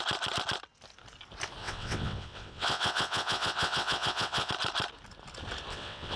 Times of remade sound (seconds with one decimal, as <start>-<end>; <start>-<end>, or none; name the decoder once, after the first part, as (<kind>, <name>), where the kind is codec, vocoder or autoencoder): 1.6-4.5 (vocoder, WaveNeXt); 5.7-6.2

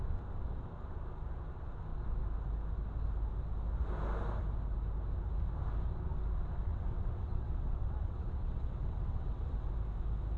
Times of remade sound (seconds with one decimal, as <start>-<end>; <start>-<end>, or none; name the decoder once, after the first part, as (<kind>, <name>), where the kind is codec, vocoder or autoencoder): 6.7-9.7 (vocoder, WaveNeXt)

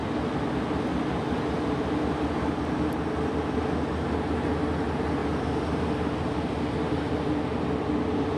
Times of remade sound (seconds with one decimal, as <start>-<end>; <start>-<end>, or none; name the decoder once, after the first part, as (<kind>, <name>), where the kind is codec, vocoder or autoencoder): none

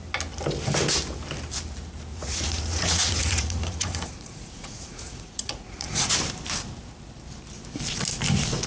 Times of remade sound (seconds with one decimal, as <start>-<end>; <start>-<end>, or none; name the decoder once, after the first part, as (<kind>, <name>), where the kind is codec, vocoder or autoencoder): 2.1-6.1 (vocoder, Vocos)

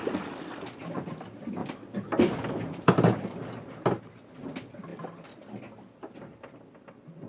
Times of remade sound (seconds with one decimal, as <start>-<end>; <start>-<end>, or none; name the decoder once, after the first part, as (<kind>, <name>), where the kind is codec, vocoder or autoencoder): none

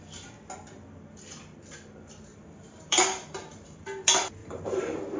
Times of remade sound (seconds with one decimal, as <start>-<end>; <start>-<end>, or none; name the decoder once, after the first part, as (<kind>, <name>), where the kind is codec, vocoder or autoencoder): 2.3-3.8 (vocoder, BigVGAN v2); 4.4-5.2

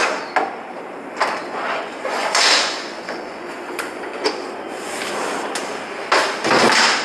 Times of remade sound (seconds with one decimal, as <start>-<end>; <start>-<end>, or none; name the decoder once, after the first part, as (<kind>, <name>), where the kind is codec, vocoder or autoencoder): 1.4-4.9 (vocoder, Vocos)

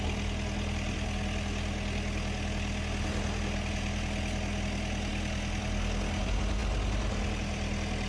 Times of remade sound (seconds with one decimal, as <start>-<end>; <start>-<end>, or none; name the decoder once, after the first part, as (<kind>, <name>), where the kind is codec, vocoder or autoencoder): none